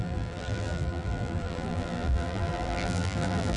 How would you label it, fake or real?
fake